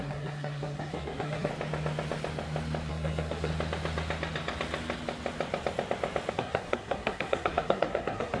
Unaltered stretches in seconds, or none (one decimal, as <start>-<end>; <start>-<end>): 1.5-2.9; 3.5-6.3